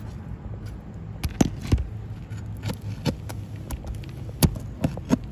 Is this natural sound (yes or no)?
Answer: yes